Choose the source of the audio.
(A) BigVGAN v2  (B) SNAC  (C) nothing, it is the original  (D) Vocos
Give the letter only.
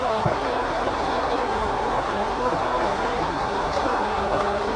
B